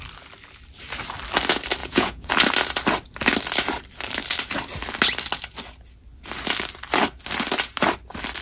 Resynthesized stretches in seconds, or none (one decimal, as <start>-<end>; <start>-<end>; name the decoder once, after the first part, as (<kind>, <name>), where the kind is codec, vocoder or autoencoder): 1.8-2.3 (vocoder, Vocos)